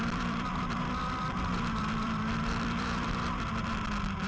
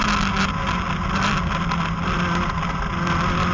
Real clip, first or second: second